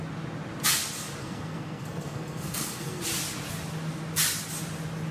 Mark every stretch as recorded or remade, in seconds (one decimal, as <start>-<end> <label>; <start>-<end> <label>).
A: 0.0-1.2 recorded; 1.2-3.0 remade; 3.0-5.1 recorded